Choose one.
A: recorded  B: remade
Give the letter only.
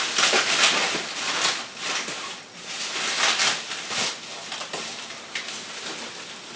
A